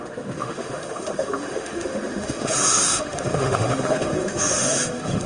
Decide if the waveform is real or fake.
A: fake